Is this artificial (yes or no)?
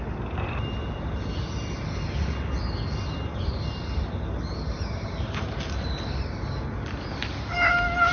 no